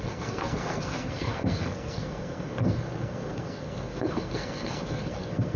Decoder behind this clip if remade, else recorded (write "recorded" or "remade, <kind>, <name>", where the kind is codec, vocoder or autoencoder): remade, codec, SNAC